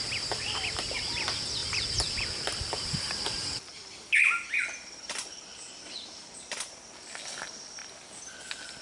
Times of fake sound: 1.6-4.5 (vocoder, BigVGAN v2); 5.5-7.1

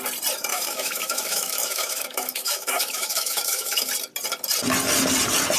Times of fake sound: 0.5-3.9 (autoencoder, DAC-VAE)

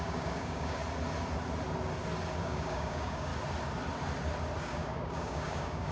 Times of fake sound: 0.0-0.8 (codec, DAC); 2.4-3.3; 4.6-5.9

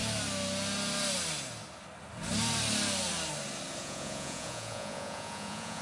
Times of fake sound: 3.8-5.8 (vocoder, Vocos)

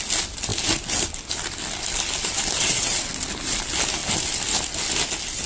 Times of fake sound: 2.6-3.1 (vocoder, WaveNeXt)

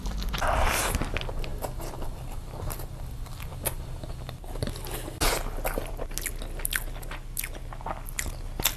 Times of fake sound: none

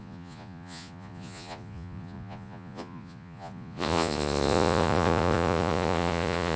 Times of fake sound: 0.0-6.6 (vocoder, Vocos)